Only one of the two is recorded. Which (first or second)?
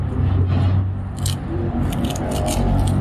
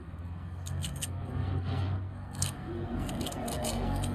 first